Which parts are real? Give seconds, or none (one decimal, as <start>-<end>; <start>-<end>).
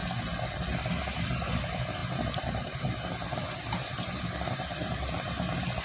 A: 0.0-2.0